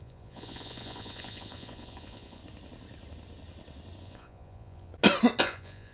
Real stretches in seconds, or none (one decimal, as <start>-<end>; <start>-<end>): 2.4-4.0; 4.9-5.4